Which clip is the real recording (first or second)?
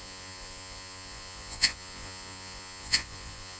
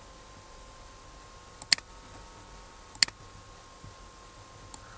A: second